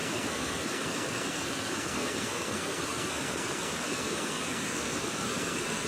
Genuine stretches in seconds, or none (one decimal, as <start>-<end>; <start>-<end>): none